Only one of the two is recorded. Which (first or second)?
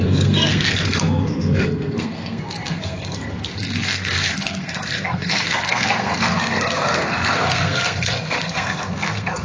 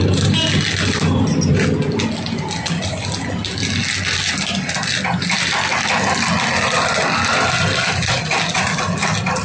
second